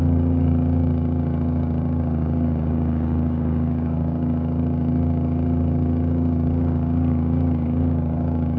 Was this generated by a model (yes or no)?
yes